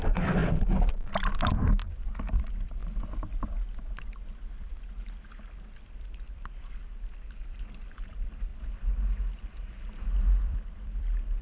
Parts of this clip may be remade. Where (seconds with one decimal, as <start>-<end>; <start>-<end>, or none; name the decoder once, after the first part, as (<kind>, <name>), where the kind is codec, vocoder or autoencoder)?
0.0-0.4 (vocoder, BigVGAN v2); 1.7-2.8; 5.9-11.4